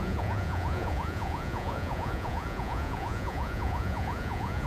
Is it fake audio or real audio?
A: fake